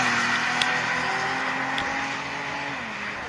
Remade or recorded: recorded